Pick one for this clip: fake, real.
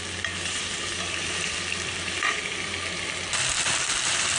real